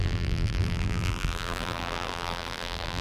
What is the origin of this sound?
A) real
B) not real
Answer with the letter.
B